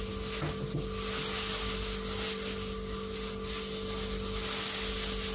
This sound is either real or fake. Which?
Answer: real